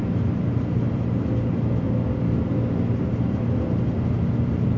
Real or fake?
real